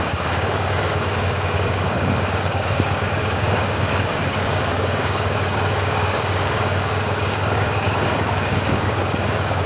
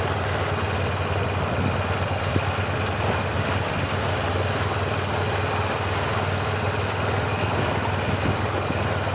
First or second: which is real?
second